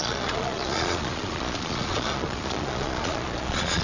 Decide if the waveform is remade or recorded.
remade